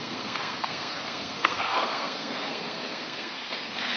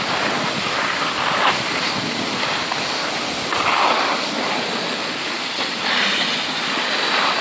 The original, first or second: second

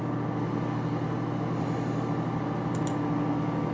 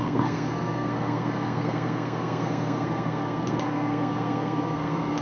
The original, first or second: first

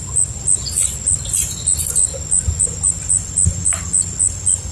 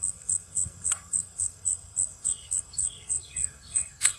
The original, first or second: first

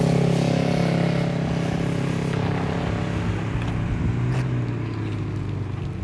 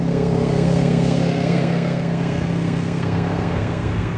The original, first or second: first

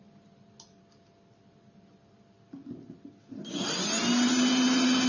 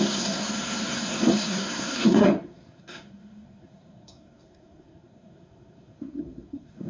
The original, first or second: first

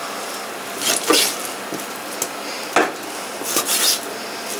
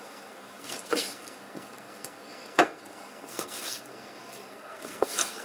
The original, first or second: first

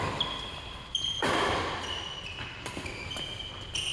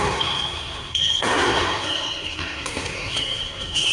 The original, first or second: first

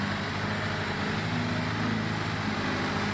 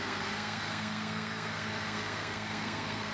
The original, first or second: first